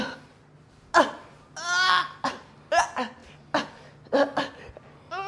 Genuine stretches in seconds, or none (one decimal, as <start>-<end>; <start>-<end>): 0.0-5.3